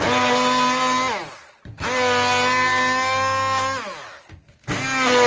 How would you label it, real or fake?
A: real